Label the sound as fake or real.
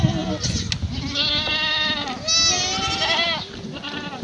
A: real